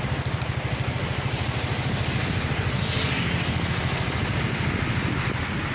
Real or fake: real